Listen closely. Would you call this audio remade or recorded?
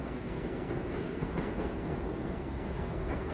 remade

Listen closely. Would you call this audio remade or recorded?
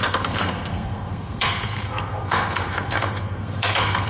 remade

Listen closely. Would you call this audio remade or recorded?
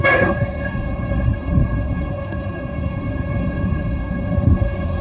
remade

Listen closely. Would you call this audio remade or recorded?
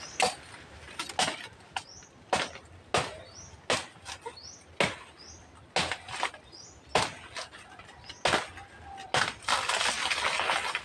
recorded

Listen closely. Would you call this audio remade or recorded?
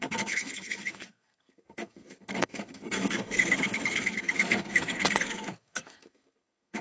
remade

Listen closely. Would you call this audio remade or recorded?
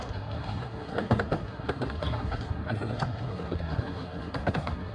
remade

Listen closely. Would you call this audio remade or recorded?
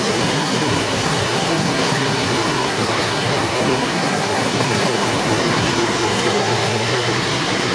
remade